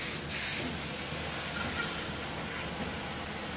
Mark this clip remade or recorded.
recorded